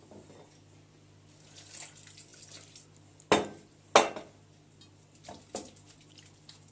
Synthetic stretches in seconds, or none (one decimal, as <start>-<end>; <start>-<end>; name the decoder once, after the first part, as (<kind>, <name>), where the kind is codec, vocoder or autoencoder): none